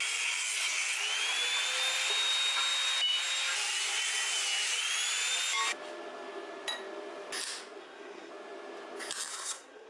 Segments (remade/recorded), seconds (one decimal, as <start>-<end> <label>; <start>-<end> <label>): 0.0-7.8 recorded; 7.8-8.3 remade; 8.3-9.3 recorded; 9.3-9.9 remade